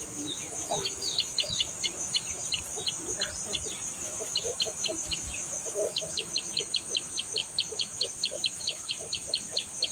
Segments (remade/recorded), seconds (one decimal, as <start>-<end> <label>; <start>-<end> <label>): 0.0-2.4 remade; 2.4-4.0 recorded; 4.0-9.9 remade